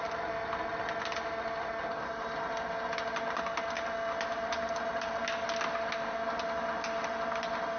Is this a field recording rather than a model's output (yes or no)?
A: yes